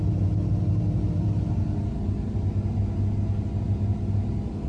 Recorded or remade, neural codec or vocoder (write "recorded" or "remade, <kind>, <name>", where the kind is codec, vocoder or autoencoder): recorded